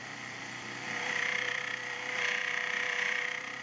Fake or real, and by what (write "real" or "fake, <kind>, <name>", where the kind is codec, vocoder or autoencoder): fake, vocoder, BigVGAN v2